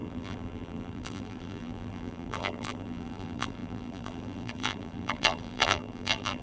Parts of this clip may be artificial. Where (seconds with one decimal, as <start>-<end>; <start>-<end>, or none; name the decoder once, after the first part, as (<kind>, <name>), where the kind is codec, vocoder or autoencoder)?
0.0-6.4 (vocoder, BigVGAN v2)